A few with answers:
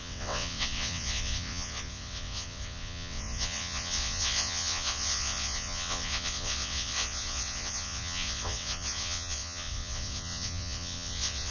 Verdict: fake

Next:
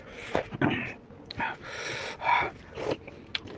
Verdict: real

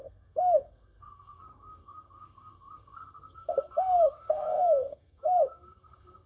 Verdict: fake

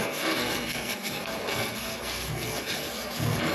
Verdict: fake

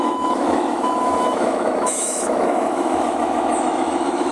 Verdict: fake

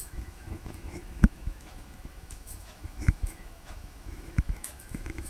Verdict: fake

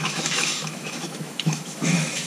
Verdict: fake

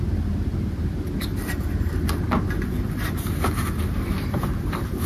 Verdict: real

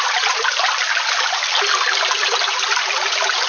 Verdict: real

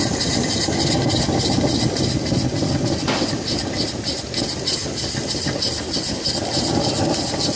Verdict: real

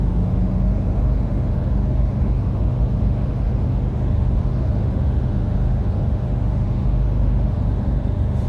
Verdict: fake